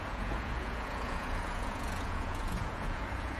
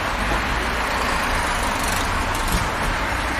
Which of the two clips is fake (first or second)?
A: first